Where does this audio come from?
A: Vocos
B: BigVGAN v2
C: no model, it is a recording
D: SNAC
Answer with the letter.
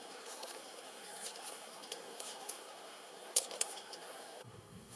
D